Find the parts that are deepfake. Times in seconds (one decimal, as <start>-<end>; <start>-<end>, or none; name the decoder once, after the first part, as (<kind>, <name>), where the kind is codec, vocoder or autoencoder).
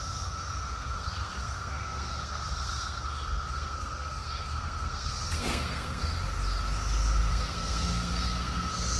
0.0-6.1 (codec, SNAC); 7.3-9.0